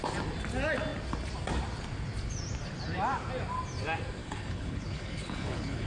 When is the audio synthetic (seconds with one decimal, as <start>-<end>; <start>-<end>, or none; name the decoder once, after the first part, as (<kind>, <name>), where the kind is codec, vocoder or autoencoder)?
4.2-5.9 (codec, HILCodec)